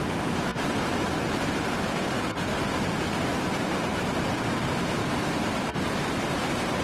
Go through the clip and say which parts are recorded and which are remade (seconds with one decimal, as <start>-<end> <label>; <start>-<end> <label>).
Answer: 0.0-0.5 remade; 0.5-3.2 recorded; 3.2-5.0 remade; 5.0-5.6 recorded; 5.6-6.8 remade